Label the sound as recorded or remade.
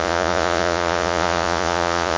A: remade